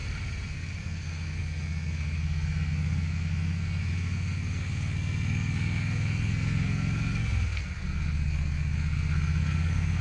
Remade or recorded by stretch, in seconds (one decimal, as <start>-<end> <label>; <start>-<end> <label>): 0.0-0.5 recorded; 0.5-10.0 remade